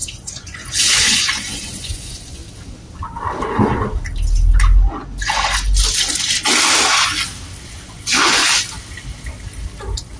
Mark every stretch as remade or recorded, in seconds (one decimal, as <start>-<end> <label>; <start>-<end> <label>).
0.0-2.4 remade; 2.4-7.6 recorded; 7.6-8.4 remade; 8.4-10.2 recorded